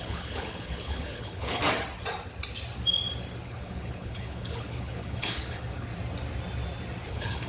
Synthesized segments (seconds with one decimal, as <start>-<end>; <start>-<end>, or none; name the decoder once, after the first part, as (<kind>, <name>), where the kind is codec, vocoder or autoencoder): 0.0-1.6 (codec, HILCodec); 3.4-5.9; 7.1-7.5

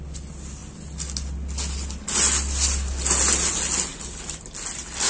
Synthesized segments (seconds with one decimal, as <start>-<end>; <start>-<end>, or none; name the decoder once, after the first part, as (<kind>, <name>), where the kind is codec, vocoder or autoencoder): none

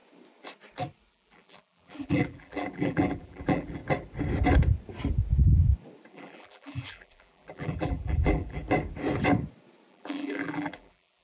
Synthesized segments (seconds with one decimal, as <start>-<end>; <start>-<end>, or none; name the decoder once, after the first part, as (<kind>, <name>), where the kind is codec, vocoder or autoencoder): 1.1-3.8 (vocoder, BigVGAN v2); 6.1-8.6; 9.9-11.2